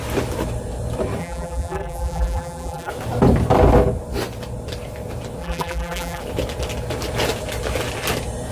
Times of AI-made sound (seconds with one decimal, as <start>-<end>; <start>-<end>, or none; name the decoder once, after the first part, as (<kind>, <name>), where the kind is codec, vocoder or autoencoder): 1.2-2.9 (vocoder, BigVGAN v2); 5.4-6.2